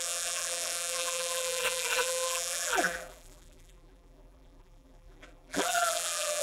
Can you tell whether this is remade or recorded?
remade